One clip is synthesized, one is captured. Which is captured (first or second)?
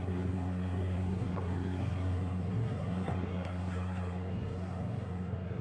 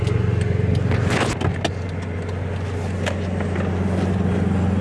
second